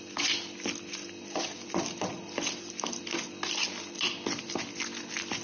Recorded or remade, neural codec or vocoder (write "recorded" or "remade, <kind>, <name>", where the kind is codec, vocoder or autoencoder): recorded